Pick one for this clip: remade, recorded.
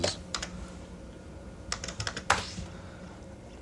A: recorded